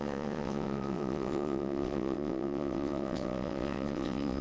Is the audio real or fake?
fake